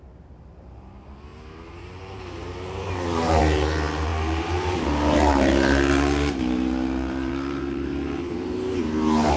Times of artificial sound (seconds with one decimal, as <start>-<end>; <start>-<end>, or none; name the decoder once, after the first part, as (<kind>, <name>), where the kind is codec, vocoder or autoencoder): 0.0-9.4 (vocoder, BigVGAN v2)